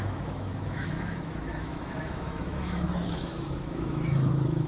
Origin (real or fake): fake